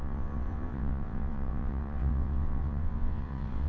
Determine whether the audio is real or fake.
fake